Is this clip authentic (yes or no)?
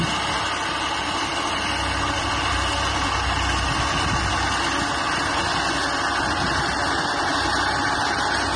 yes